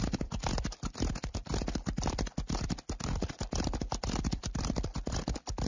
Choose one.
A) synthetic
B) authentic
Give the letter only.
A